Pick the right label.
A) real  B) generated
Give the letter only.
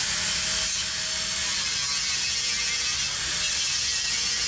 A